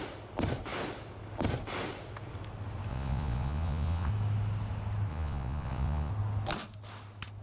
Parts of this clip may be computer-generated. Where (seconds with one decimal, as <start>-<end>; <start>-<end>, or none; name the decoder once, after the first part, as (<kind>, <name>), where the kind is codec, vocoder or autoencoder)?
2.9-4.1 (vocoder, Vocos); 5.1-6.1